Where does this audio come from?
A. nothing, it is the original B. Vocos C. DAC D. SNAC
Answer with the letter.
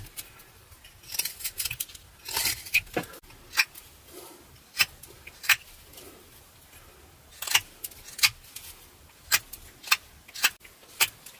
A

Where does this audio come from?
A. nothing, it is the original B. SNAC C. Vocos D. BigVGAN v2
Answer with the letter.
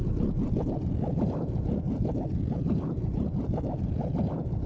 A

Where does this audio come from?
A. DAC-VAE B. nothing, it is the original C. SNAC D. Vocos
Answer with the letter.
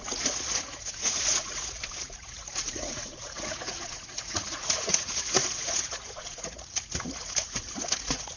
D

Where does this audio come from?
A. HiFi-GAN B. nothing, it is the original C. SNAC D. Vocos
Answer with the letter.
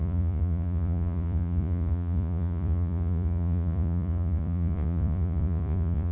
D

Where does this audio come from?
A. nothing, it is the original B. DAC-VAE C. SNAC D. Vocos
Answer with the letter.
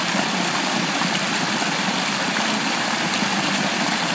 A